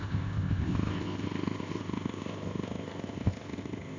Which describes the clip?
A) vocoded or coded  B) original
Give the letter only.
A